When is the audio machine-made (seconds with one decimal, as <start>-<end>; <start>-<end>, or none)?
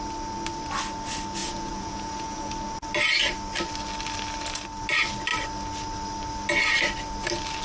1.4-2.5